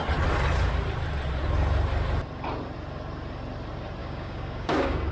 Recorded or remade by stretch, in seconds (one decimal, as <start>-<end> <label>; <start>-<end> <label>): 0.0-4.0 recorded; 4.0-5.1 remade